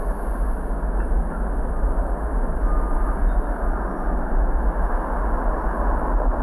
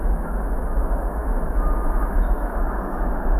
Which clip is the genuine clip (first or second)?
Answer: first